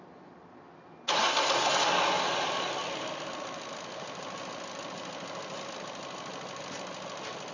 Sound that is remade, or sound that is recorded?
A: recorded